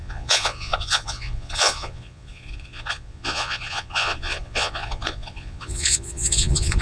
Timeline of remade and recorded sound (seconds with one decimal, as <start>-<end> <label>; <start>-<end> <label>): 0.0-6.8 remade